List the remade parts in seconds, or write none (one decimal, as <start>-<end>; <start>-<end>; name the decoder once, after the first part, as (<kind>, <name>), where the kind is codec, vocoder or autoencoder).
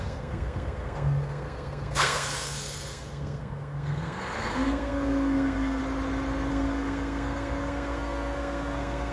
0.0-5.8 (codec, SNAC); 6.5-9.1